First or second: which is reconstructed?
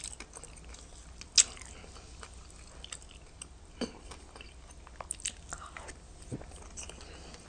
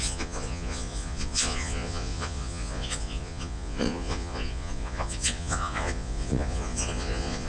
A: second